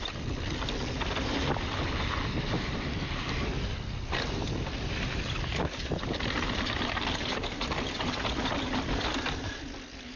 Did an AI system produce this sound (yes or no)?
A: yes